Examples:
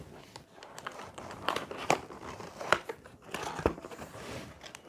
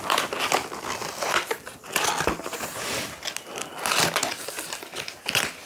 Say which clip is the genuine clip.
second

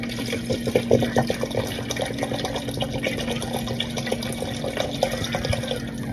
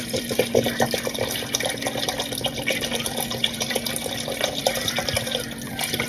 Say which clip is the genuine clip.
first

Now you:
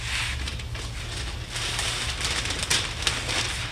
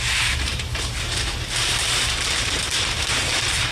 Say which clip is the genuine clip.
first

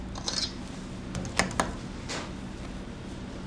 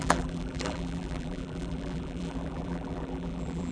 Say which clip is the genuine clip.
first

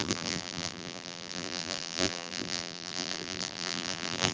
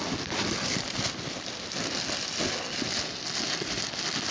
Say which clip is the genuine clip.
second